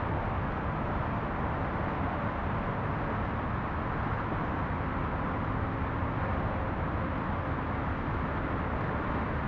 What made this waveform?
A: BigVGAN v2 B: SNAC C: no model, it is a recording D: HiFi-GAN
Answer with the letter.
C